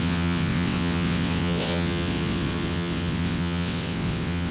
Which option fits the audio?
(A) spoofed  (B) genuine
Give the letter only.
A